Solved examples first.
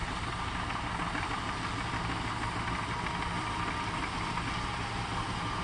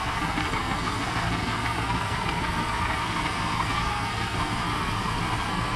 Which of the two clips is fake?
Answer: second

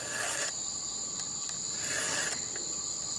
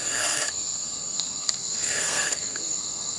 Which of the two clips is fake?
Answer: second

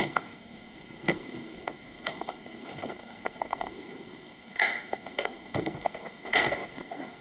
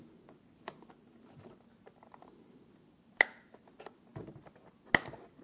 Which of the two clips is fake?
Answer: first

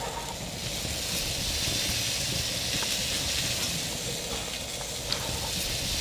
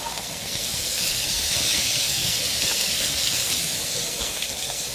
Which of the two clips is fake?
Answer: second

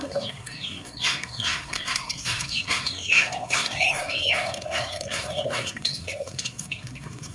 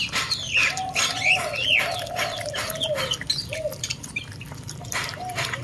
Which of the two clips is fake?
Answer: first